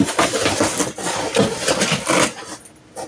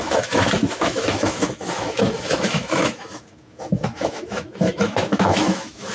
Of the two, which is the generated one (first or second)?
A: second